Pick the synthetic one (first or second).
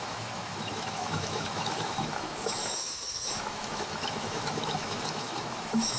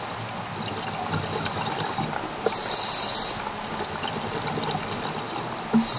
first